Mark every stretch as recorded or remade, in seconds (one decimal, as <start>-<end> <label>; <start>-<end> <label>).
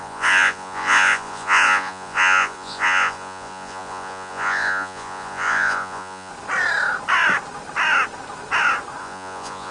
0.0-6.3 remade; 6.3-9.0 recorded; 9.0-9.7 remade